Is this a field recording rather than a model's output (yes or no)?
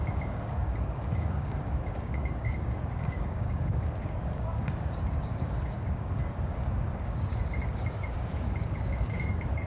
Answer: no